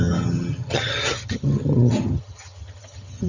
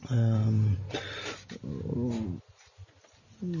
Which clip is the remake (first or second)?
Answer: first